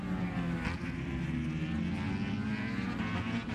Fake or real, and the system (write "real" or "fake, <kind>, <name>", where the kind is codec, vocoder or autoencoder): real